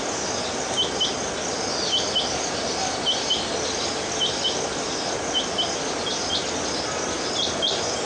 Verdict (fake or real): real